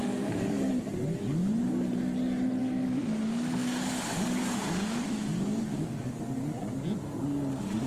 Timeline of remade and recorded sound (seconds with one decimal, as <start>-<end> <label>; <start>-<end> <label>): 0.0-0.7 remade; 0.7-2.6 recorded; 2.6-6.2 remade; 6.2-7.9 recorded